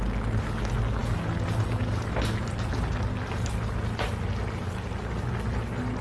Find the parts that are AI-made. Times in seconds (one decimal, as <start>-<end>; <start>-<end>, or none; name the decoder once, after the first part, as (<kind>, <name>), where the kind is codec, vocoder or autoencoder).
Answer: none

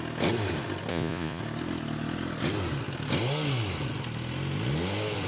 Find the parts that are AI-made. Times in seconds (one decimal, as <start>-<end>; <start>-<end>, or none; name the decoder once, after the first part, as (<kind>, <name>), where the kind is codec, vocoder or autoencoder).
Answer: 0.9-1.4 (vocoder, Vocos)

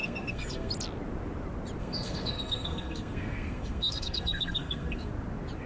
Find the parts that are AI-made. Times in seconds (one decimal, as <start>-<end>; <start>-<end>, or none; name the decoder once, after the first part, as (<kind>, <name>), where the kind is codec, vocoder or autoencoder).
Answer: 0.0-0.7 (codec, SNAC); 1.8-5.1

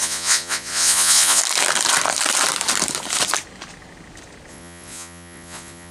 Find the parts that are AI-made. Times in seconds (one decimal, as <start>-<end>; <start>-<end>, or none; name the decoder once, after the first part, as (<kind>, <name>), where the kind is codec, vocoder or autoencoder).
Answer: 0.0-1.4 (vocoder, Vocos); 4.5-5.9

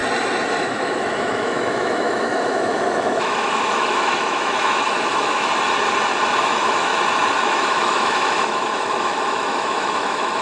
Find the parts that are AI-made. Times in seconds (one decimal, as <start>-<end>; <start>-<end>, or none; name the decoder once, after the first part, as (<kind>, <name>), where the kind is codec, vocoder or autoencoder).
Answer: 0.5-5.4 (autoencoder, DAC-VAE); 6.4-6.9; 7.4-10.4

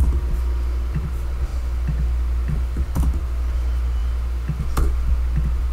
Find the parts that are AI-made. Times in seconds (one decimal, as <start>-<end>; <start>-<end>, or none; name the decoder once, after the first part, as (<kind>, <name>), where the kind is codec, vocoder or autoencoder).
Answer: 0.0-1.1 (vocoder, BigVGAN v2)

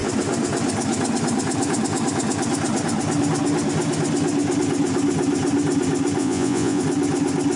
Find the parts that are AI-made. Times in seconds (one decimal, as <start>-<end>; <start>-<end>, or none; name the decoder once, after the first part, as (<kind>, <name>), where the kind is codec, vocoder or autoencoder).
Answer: 6.2-6.8 (vocoder, Vocos)

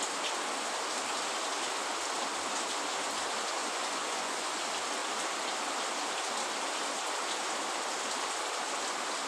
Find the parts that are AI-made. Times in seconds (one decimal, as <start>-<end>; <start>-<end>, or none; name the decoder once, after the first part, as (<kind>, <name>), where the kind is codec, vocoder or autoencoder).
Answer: 3.6-4.6 (vocoder, Vocos)